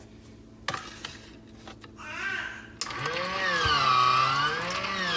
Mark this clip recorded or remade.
recorded